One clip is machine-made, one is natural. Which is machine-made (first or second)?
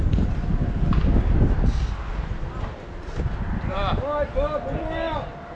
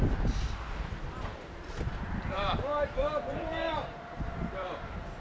second